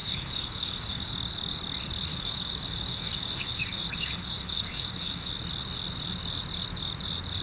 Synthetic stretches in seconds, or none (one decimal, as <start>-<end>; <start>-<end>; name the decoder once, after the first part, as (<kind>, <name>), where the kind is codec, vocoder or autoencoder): 0.0-1.1 (codec, DAC); 2.1-5.3